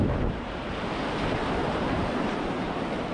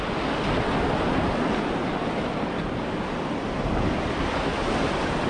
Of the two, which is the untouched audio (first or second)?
second